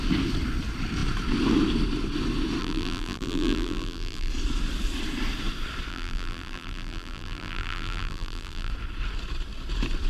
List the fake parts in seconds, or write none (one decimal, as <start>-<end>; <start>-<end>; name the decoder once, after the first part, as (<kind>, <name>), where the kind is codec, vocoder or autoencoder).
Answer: 2.6-4.3 (vocoder, BigVGAN v2); 5.9-8.7